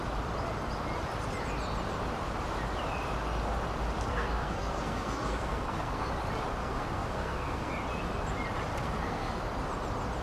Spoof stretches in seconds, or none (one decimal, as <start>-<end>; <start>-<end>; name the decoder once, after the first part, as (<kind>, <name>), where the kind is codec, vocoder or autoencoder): 4.1-6.1 (codec, SNAC); 6.6-7.7; 8.7-9.4